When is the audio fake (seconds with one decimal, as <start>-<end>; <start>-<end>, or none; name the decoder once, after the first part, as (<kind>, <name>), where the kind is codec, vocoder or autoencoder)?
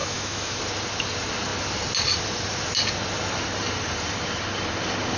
0.0-0.6 (autoencoder, DAC-VAE)